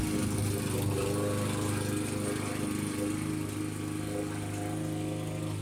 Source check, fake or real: real